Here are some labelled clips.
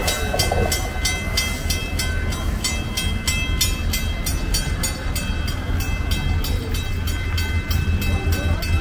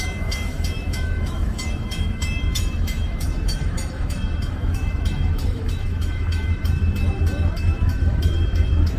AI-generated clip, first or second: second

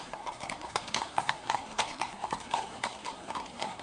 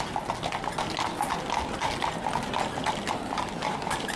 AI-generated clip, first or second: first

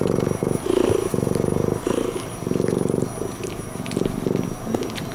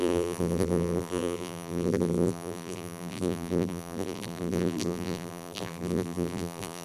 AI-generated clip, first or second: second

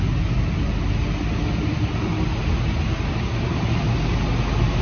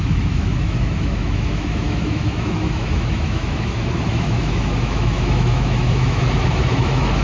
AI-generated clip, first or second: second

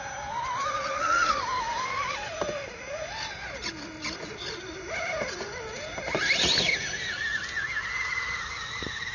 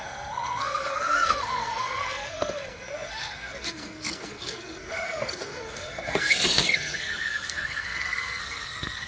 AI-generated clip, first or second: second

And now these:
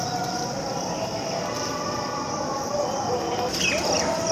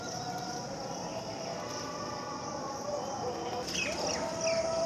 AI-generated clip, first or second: first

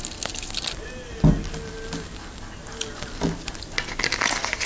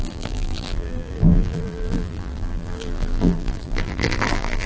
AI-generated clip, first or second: second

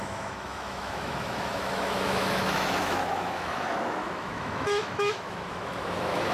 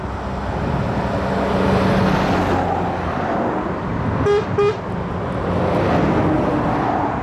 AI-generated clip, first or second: first